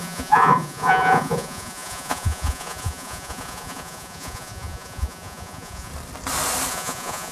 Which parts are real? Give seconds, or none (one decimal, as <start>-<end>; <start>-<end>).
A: 5.9-6.7